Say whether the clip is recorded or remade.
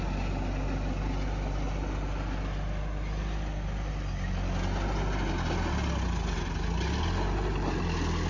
recorded